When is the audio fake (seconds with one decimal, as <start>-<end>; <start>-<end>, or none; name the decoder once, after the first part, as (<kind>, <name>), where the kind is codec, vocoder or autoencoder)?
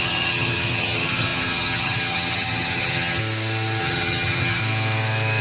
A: 0.0-3.2 (vocoder, HiFi-GAN); 3.8-4.6